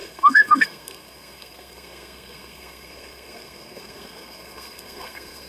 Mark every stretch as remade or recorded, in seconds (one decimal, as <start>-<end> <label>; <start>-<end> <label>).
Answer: 0.0-5.5 remade